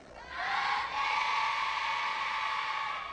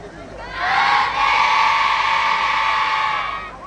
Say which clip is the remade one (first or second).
first